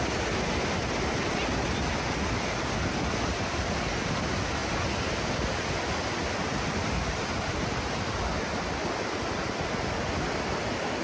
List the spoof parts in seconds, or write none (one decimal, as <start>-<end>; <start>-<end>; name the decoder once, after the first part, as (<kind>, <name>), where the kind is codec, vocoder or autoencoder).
none